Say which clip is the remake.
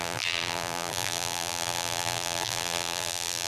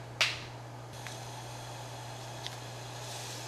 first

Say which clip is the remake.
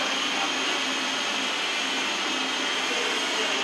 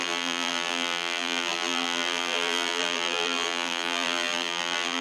second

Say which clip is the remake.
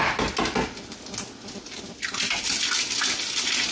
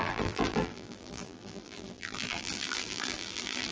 second